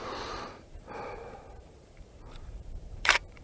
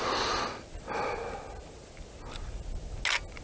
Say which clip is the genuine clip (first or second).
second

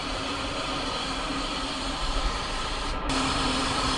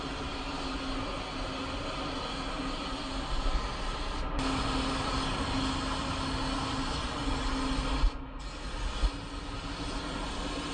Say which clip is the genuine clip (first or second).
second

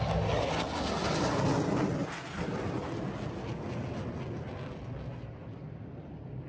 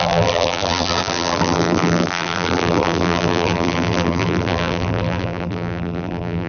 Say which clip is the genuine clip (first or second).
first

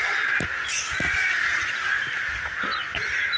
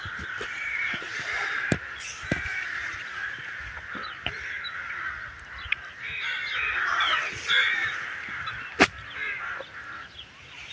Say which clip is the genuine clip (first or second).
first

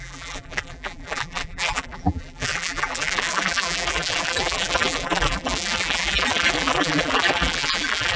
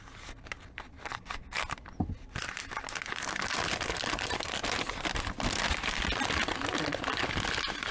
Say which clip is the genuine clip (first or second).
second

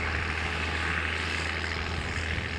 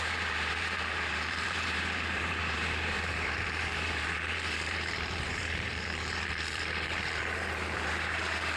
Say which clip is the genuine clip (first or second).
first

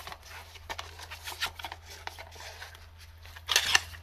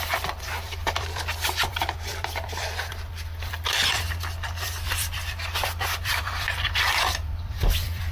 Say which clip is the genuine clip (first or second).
first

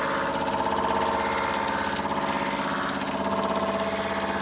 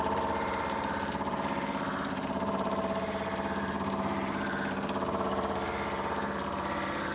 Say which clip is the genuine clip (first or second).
first